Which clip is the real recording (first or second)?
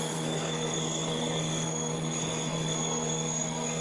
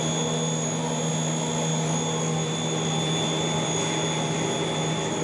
second